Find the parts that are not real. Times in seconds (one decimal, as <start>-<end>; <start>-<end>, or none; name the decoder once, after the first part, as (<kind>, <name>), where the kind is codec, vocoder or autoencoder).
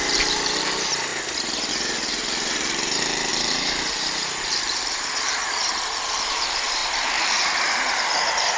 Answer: 0.0-1.1 (vocoder, BigVGAN v2); 1.7-6.8